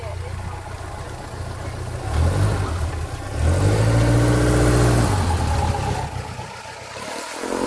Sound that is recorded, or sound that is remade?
recorded